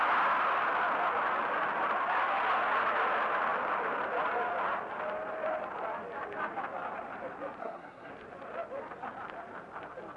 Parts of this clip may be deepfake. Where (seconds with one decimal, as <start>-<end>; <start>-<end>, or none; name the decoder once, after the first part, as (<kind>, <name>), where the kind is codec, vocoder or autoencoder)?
7.6-8.1 (codec, SNAC)